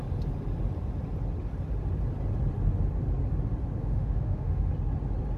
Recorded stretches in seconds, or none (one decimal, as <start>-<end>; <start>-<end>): 0.0-3.8; 4.7-5.4